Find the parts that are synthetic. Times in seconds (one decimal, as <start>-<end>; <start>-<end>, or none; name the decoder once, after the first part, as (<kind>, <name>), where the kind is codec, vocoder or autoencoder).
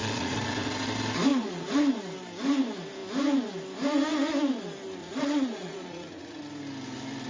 0.0-0.5 (vocoder, Vocos); 1.3-1.9; 5.0-6.4